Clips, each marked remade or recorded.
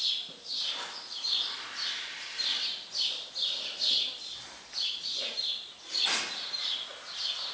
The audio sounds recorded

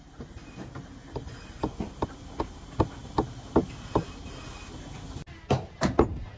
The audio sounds recorded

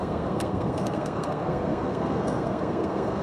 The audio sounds remade